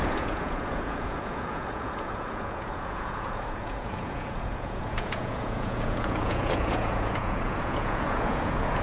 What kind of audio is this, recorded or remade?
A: remade